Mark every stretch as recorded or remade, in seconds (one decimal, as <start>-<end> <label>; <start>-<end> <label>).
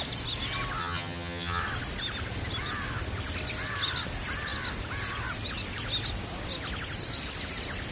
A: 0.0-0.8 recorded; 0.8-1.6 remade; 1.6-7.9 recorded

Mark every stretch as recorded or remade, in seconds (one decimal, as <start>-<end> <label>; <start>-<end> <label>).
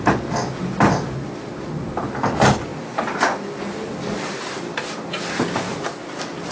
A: 0.0-6.5 recorded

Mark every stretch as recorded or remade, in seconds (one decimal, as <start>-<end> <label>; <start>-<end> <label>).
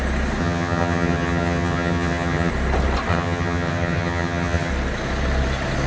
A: 0.0-0.4 recorded; 0.4-2.5 remade; 2.5-3.1 recorded; 3.1-4.7 remade; 4.7-5.9 recorded